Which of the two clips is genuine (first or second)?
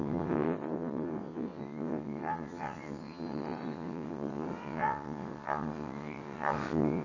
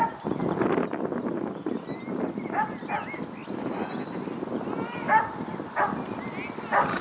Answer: second